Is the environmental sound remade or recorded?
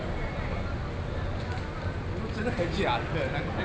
recorded